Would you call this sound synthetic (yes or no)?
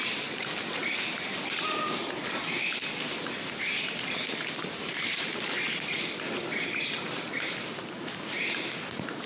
no